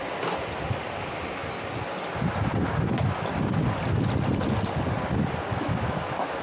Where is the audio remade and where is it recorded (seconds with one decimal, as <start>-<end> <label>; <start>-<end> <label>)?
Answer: 0.0-5.5 recorded; 5.5-6.4 remade